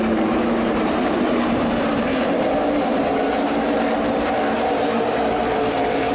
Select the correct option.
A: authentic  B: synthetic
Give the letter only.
B